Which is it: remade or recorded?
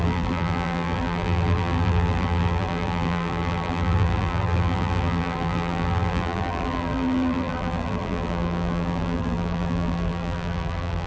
remade